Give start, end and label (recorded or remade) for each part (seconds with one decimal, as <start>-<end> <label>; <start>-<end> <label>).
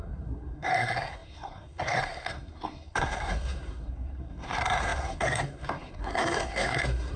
0.0-7.2 remade